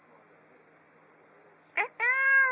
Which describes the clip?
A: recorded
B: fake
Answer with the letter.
A